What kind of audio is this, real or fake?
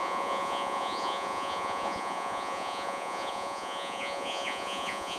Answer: fake